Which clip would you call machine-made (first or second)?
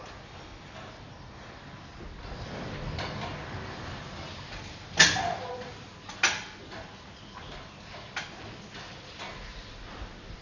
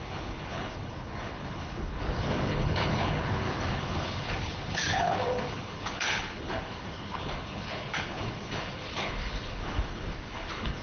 second